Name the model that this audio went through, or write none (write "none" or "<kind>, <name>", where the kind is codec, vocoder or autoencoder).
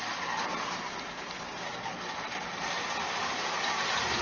none